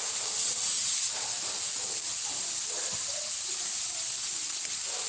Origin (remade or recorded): recorded